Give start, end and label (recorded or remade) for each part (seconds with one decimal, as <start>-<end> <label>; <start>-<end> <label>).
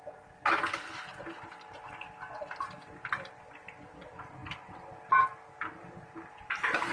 0.0-6.9 recorded